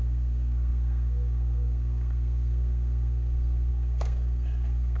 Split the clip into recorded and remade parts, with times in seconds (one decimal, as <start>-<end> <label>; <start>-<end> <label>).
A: 0.0-5.0 remade